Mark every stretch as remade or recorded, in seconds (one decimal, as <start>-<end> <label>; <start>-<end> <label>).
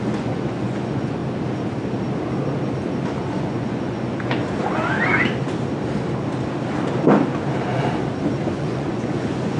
0.0-1.2 remade; 1.2-3.2 recorded; 3.2-4.4 remade; 4.4-8.5 recorded; 8.5-9.6 remade